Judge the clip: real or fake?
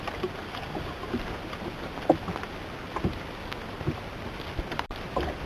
real